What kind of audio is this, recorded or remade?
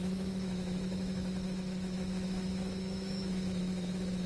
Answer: remade